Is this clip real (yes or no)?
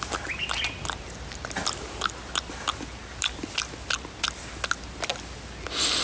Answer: yes